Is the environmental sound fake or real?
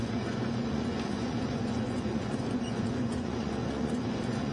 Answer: fake